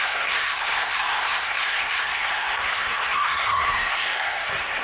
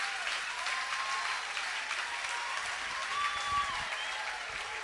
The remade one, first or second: first